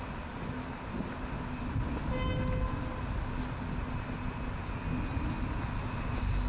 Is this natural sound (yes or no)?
yes